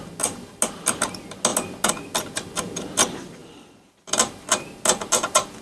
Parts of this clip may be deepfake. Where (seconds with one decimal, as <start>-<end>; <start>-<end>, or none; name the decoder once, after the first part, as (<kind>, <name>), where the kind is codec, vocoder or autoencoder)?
none